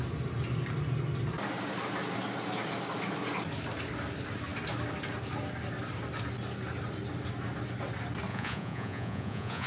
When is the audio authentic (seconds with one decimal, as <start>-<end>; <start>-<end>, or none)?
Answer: 0.0-8.3